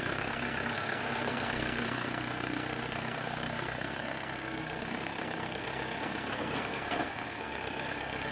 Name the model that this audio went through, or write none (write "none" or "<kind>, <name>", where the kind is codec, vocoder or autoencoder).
codec, SNAC